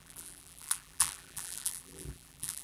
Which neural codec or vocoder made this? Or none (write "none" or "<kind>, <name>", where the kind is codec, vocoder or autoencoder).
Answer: vocoder, BigVGAN v2